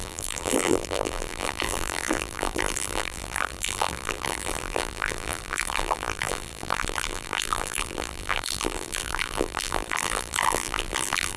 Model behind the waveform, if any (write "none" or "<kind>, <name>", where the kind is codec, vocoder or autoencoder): vocoder, BigVGAN v2